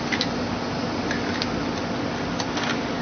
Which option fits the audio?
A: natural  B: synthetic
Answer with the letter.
A